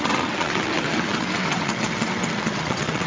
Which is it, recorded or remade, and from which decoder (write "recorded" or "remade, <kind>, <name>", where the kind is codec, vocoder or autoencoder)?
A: remade, vocoder, WaveNeXt